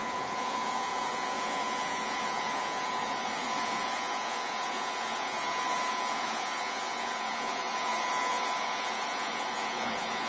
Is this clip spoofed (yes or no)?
yes